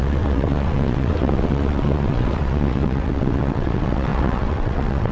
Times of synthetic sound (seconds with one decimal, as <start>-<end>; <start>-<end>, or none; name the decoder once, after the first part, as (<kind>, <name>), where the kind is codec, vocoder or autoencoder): 0.0-5.1 (vocoder, WaveNeXt)